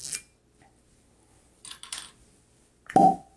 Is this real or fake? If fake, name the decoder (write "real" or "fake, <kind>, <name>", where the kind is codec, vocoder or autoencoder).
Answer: real